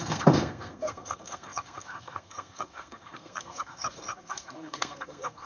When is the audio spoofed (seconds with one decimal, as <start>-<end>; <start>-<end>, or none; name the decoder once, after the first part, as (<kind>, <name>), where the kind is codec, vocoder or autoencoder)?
0.0-5.5 (codec, SNAC)